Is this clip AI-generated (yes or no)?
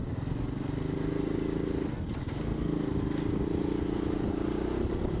no